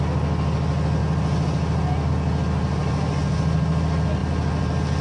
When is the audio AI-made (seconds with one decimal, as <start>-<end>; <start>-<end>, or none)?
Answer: none